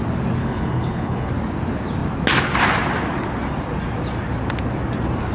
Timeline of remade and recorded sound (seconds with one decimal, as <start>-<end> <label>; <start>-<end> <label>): 0.0-0.4 recorded; 0.4-1.3 remade; 1.3-5.3 recorded